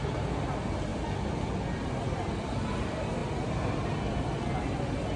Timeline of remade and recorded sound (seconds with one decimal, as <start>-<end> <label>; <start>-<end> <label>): 0.0-5.2 recorded